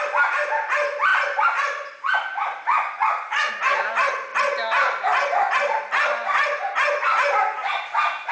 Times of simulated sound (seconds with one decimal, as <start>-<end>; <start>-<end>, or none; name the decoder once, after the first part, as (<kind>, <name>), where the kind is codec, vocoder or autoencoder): none